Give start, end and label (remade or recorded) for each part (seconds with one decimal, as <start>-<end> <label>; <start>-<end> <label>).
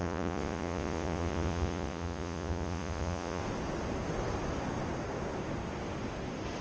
0.0-3.4 remade; 3.4-6.6 recorded